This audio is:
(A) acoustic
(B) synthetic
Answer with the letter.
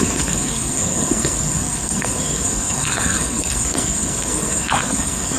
B